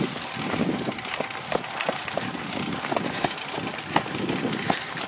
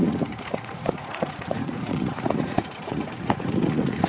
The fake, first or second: second